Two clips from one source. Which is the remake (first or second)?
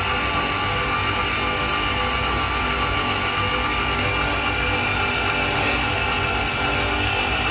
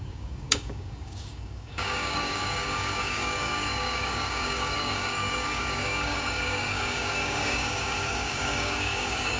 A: second